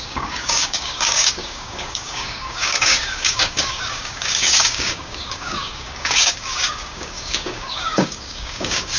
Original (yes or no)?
no